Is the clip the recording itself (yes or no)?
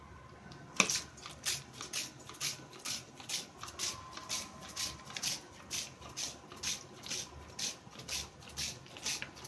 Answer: yes